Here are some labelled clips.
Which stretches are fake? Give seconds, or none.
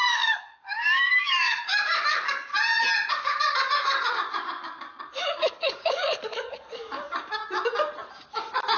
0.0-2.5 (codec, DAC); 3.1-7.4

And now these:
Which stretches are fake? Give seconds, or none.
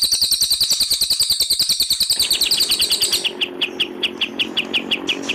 none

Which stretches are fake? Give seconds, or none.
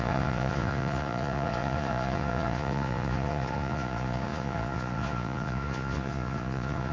0.0-6.9 (vocoder, Vocos)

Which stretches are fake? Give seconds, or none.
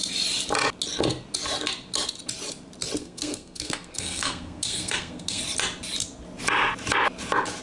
3.0-5.4 (codec, SNAC)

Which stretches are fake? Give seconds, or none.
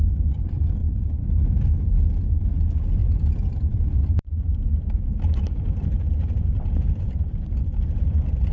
0.0-8.5 (vocoder, BigVGAN v2)